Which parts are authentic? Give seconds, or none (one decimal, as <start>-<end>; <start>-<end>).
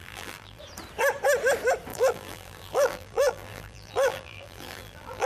0.6-1.9